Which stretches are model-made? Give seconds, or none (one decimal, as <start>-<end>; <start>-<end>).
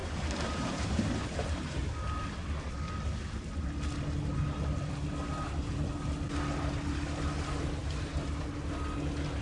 0.0-1.8; 7.8-8.7